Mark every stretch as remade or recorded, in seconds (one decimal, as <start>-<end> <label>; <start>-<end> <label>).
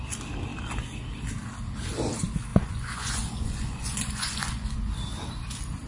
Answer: 0.0-2.5 recorded; 2.5-4.9 remade; 4.9-5.9 recorded